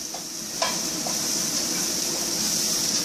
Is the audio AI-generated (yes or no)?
no